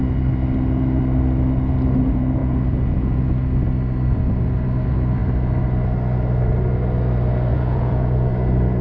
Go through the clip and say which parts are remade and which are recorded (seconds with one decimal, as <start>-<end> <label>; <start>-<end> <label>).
0.0-2.4 recorded; 2.4-3.3 remade; 3.3-7.5 recorded; 7.5-8.3 remade; 8.3-8.8 recorded